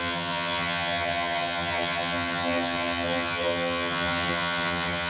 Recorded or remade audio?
remade